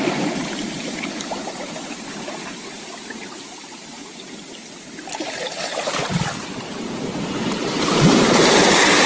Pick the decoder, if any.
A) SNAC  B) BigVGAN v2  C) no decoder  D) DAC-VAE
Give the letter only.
B